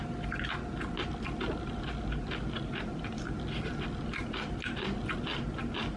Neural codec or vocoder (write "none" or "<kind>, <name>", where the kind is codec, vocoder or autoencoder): none